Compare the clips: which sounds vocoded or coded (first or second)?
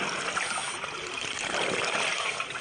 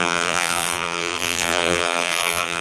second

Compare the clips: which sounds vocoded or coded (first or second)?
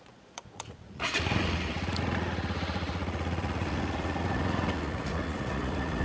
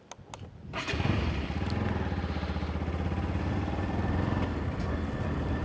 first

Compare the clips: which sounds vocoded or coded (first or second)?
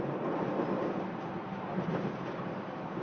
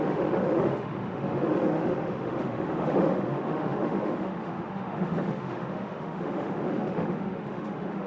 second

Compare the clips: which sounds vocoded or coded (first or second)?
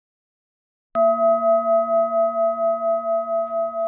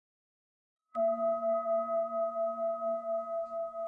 second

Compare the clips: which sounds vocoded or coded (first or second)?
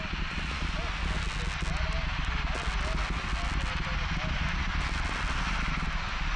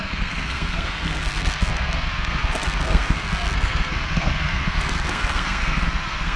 second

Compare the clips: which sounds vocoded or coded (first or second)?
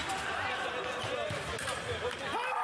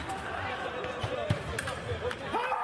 second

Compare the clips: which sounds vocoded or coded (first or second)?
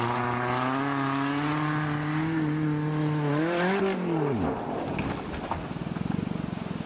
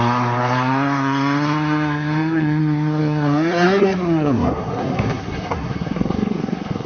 second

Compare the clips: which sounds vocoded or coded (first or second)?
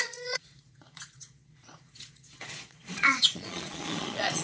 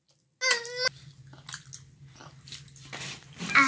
first